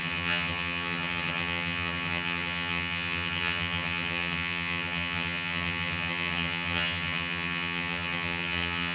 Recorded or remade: remade